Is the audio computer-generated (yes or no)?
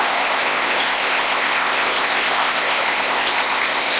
yes